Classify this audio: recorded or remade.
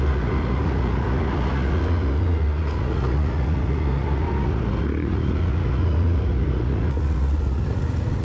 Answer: remade